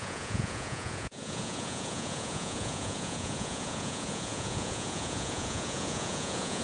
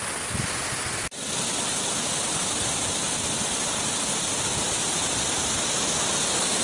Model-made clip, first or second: first